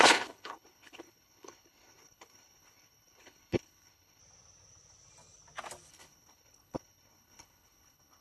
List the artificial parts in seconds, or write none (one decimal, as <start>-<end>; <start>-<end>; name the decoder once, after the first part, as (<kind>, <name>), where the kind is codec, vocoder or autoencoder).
0.0-4.2 (codec, HILCodec); 5.9-8.2